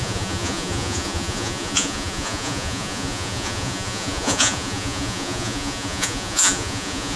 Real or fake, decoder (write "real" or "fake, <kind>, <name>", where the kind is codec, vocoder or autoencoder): fake, vocoder, Vocos